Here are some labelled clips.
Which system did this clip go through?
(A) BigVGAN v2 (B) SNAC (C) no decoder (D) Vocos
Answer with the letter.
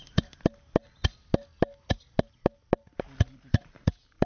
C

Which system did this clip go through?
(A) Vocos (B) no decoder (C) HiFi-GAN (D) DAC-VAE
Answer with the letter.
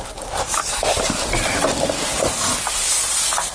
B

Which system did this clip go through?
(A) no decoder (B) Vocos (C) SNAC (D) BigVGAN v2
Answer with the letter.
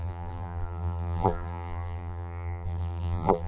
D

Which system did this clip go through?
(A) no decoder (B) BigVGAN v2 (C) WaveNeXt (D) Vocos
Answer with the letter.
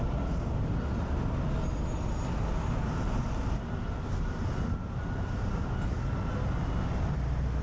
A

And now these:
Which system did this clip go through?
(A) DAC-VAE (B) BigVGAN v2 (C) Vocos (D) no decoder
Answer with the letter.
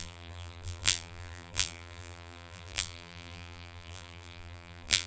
B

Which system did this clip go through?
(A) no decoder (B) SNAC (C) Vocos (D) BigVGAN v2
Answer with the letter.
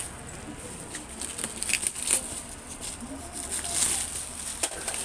A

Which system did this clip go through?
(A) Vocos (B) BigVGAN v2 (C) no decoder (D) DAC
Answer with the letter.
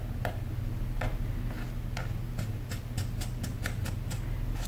C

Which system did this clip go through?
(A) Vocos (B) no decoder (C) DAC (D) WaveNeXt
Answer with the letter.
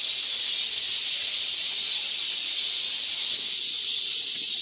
B